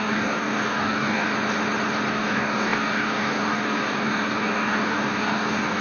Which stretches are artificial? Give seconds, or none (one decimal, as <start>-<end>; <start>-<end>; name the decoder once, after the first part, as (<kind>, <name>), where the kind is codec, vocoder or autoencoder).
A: 0.0-1.3 (codec, DAC); 2.1-5.8